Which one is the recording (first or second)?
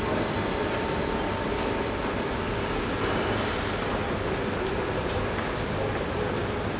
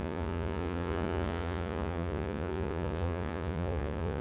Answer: first